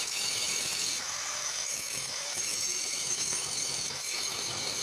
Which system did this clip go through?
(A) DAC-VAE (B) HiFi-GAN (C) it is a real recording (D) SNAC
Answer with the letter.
A